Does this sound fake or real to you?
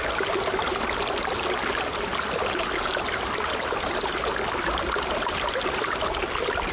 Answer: real